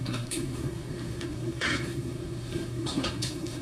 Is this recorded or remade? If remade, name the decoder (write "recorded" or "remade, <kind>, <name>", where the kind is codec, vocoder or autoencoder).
remade, codec, SNAC